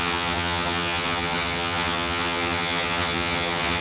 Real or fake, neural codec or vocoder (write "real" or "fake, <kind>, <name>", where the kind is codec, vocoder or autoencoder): fake, vocoder, HiFi-GAN